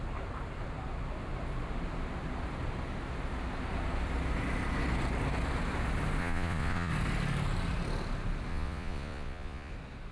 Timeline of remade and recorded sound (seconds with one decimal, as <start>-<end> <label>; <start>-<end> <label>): 0.0-6.2 recorded; 6.2-6.9 remade; 6.9-8.5 recorded; 8.5-9.7 remade; 9.7-10.1 recorded